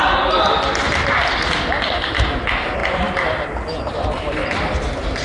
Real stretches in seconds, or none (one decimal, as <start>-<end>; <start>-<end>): 0.0-5.2